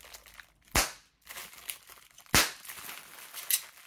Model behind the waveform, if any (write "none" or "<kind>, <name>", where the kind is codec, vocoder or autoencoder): none